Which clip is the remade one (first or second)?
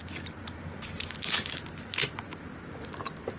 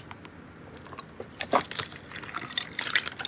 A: first